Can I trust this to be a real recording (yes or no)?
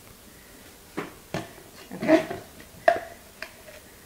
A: yes